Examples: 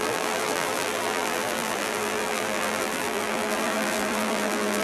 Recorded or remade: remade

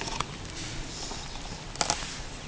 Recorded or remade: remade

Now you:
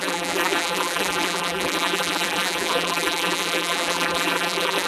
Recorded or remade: remade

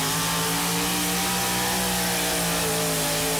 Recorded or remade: remade